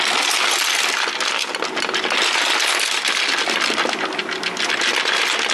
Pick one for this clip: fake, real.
real